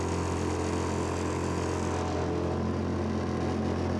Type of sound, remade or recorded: recorded